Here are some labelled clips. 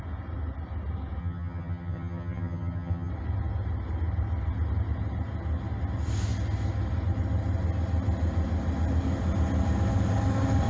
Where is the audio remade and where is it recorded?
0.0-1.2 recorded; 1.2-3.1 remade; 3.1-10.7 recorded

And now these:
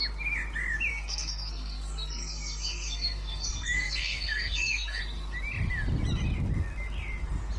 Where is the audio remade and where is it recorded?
0.0-0.9 recorded; 0.9-5.0 remade; 5.0-7.6 recorded

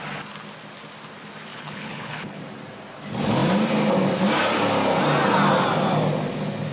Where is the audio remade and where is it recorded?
0.0-1.5 recorded; 1.5-2.4 remade; 2.4-6.7 recorded

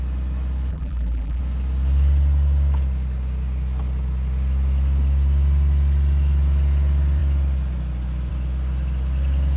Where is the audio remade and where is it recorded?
0.0-0.7 recorded; 0.7-1.4 remade; 1.4-9.6 recorded

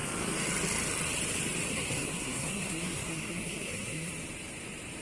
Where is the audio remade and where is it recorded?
0.0-1.7 recorded; 1.7-4.1 remade; 4.1-5.0 recorded

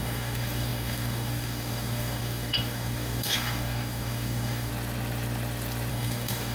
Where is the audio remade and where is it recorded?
0.0-4.7 remade; 4.7-5.9 recorded; 5.9-6.5 remade

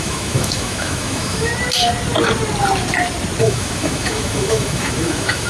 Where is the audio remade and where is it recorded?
0.0-1.5 remade; 1.5-3.4 recorded; 3.4-5.5 remade

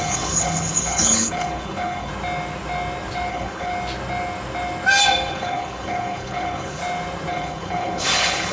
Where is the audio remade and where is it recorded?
0.0-2.1 remade; 2.1-3.3 recorded; 3.3-3.7 remade; 3.7-5.3 recorded; 5.3-6.8 remade; 6.8-7.3 recorded; 7.3-8.5 remade